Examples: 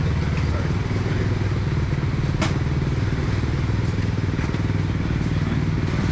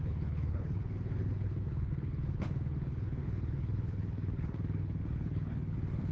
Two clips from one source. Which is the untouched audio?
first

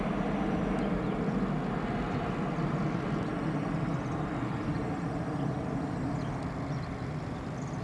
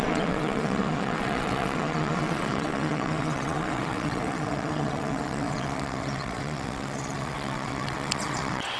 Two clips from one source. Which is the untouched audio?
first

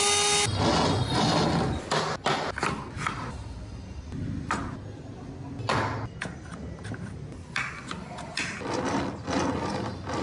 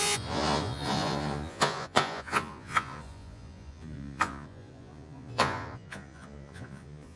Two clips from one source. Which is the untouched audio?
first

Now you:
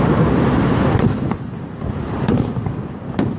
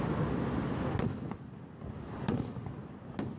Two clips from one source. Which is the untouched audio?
second